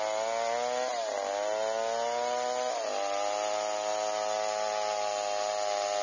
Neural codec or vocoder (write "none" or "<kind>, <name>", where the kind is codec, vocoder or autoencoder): none